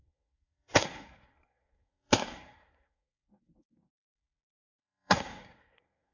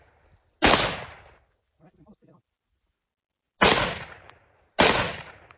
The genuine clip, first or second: second